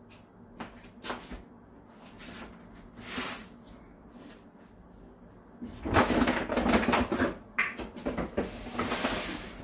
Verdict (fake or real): real